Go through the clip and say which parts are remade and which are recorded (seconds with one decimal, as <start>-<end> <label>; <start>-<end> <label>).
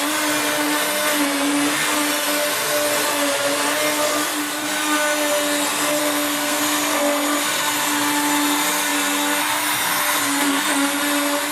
0.0-6.0 recorded; 6.0-6.6 remade; 6.6-11.5 recorded